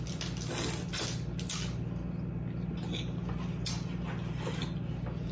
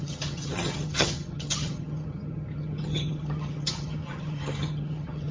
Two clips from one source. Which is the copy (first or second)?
second